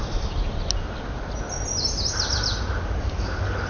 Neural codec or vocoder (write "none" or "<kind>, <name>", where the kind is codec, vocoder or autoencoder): none